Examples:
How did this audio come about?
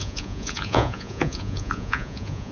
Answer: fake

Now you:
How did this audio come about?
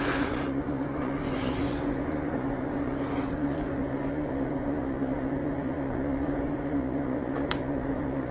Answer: fake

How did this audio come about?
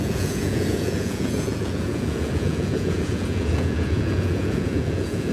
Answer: fake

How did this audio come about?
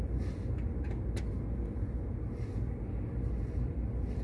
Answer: real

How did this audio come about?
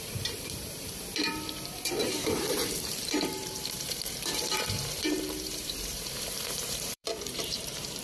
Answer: fake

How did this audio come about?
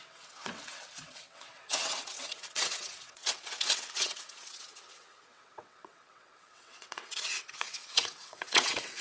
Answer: fake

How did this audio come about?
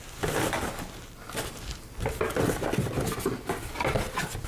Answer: real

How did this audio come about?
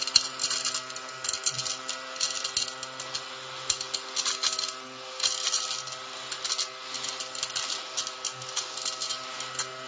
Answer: real